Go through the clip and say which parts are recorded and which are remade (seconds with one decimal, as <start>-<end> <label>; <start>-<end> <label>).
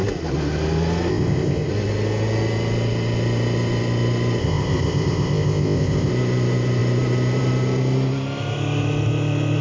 0.0-1.1 recorded; 1.1-1.7 remade; 1.7-4.4 recorded; 4.4-6.1 remade; 6.1-9.6 recorded